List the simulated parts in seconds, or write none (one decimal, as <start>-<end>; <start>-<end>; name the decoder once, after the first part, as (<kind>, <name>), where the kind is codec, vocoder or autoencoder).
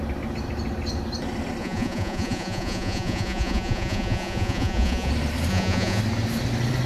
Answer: 1.6-5.1 (vocoder, Vocos); 5.5-6.0